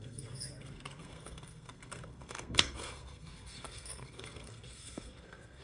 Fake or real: fake